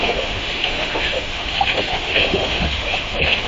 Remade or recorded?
remade